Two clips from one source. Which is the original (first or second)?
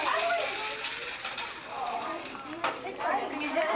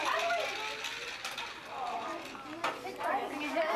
second